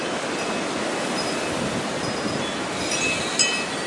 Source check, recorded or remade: recorded